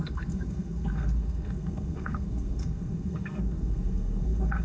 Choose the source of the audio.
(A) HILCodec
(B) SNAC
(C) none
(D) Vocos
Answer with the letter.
B